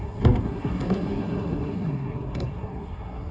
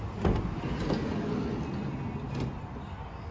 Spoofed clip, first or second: first